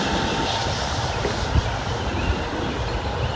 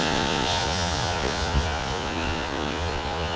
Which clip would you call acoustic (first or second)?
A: first